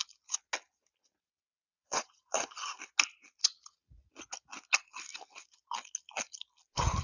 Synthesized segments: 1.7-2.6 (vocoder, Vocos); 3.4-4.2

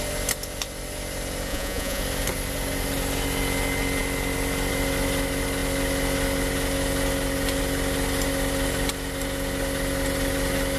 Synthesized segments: 1.5-2.0 (vocoder, Vocos)

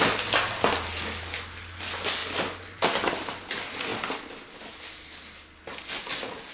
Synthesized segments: none

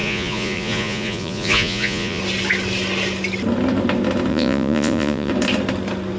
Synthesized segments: 0.0-2.2 (vocoder, Vocos); 4.3-5.3

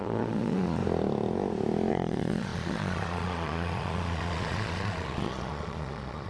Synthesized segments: 0.0-0.8 (vocoder, Vocos); 1.9-6.3

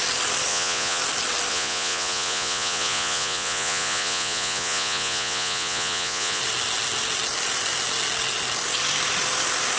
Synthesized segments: 0.5-1.0 (vocoder, Vocos); 1.5-6.4

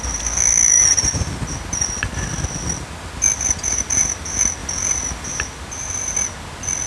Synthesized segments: none

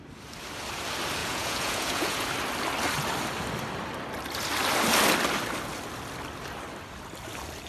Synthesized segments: 1.2-2.3 (vocoder, Vocos)